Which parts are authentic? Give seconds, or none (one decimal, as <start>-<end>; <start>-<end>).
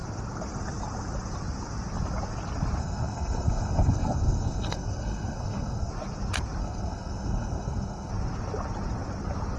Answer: 0.0-2.8; 5.9-6.6; 8.1-9.6